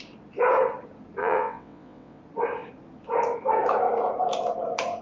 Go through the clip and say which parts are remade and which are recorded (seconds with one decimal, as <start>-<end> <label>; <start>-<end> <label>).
0.0-1.2 recorded; 1.2-2.2 remade; 2.2-5.0 recorded